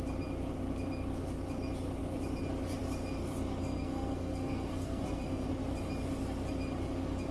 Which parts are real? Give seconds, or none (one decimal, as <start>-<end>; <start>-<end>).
0.0-3.6; 5.5-7.3